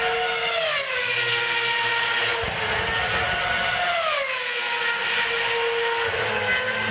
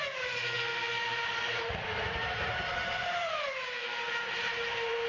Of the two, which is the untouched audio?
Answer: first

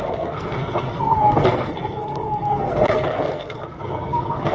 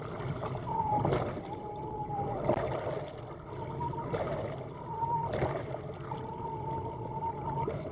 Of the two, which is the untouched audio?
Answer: second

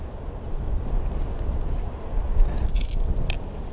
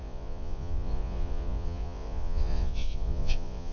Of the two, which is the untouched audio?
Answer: first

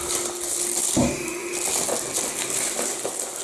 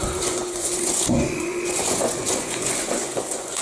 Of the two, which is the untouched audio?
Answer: first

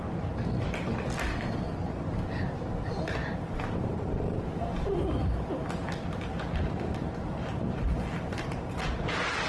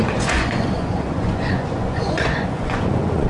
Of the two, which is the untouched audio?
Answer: first